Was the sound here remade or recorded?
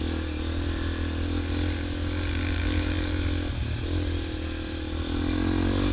recorded